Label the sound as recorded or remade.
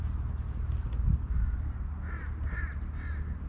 recorded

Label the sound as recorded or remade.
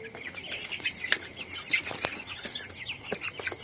recorded